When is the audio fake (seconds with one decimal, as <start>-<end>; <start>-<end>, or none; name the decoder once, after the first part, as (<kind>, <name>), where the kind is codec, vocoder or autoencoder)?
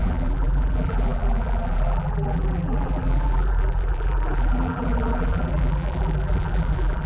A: 0.0-7.1 (vocoder, BigVGAN v2)